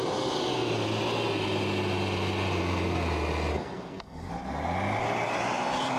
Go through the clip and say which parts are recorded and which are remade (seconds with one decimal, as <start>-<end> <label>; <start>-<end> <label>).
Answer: 0.0-3.5 recorded; 3.5-4.3 remade; 4.3-6.0 recorded